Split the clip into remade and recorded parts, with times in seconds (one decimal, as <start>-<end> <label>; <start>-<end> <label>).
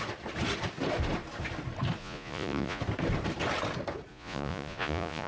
0.0-2.0 recorded; 2.0-2.8 remade; 2.8-4.1 recorded; 4.1-5.3 remade